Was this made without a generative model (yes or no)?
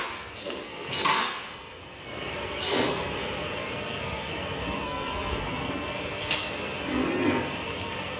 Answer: no